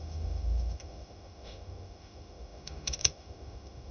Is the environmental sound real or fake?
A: fake